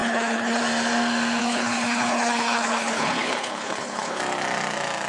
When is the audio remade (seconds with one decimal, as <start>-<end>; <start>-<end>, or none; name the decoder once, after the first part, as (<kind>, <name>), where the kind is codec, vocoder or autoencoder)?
0.0-0.6 (codec, HILCodec); 1.4-4.2

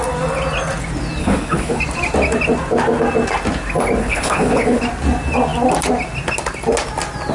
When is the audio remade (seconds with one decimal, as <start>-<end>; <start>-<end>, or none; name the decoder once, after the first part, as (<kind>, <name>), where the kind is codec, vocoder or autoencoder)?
1.2-1.8 (codec, HILCodec); 4.0-4.8